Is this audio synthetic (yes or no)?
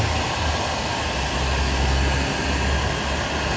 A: no